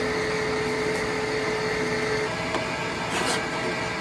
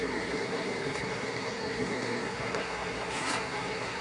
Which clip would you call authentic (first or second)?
first